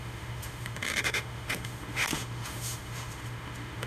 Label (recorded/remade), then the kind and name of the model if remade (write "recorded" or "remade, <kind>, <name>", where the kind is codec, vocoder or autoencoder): remade, autoencoder, DAC-VAE